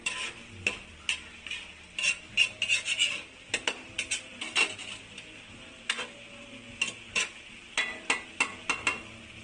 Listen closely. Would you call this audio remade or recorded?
recorded